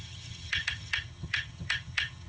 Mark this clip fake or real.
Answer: fake